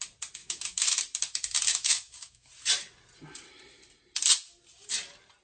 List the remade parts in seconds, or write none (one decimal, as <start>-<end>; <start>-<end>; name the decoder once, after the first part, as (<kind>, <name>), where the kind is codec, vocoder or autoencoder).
0.4-1.0 (autoencoder, DAC-VAE); 1.7-2.5